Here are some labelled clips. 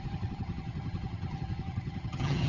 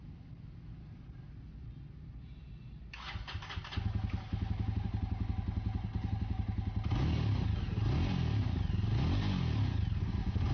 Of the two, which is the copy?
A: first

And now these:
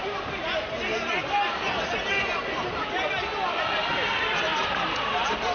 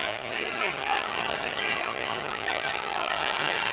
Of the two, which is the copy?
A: second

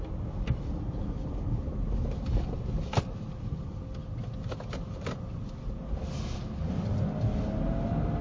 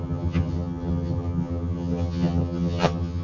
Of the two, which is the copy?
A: second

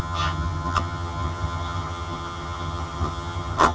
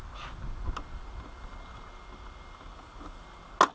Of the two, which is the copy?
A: first